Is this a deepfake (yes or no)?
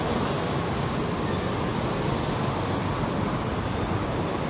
no